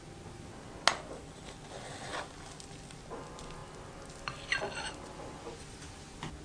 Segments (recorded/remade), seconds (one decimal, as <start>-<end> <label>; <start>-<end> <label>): 0.0-6.4 recorded

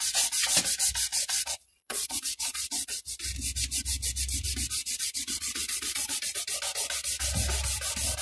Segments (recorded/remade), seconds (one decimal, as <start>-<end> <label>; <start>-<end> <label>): 0.0-1.1 recorded; 1.1-3.2 remade; 3.2-4.8 recorded; 4.8-6.4 remade; 6.4-8.2 recorded

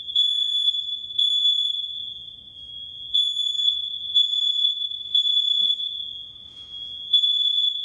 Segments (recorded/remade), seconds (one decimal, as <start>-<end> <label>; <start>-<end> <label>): 0.0-7.8 remade

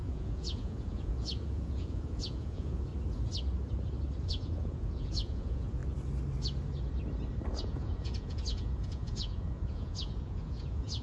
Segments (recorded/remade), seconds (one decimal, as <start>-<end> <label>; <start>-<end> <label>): 0.0-2.9 remade; 2.9-4.3 recorded; 4.3-5.8 remade; 5.8-7.6 recorded; 7.6-11.0 remade

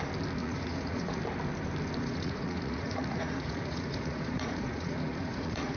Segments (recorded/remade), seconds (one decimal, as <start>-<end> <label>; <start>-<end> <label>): 0.0-0.4 recorded; 0.4-1.2 remade; 1.2-2.0 recorded; 2.0-5.8 remade

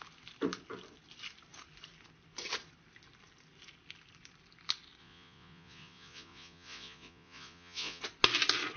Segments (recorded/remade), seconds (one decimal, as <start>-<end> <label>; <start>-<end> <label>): 0.0-5.0 recorded; 5.0-8.0 remade; 8.0-8.8 recorded

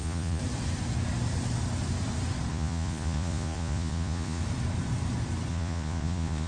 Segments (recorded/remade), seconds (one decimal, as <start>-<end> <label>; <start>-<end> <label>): 0.0-0.4 remade; 0.4-2.5 recorded; 2.5-4.4 remade; 4.4-5.5 recorded; 5.5-6.5 remade

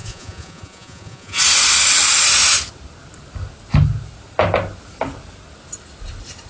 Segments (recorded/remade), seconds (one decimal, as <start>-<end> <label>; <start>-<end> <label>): 0.0-1.4 remade; 1.4-6.5 recorded